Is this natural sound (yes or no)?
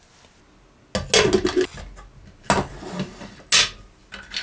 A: yes